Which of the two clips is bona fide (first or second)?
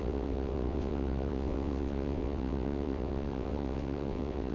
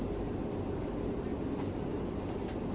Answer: second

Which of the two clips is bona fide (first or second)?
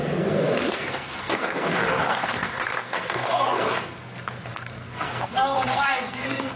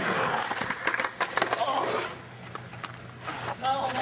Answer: second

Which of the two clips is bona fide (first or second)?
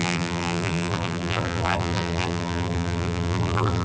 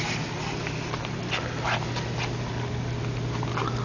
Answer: second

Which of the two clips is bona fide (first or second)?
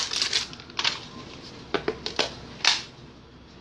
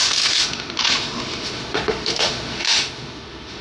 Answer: first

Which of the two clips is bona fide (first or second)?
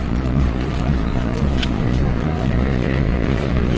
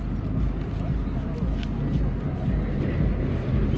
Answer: second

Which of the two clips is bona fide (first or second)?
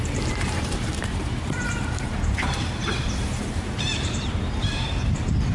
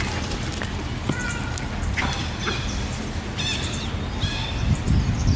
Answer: second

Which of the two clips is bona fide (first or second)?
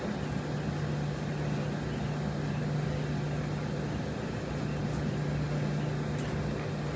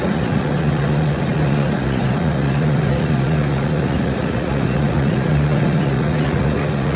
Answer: first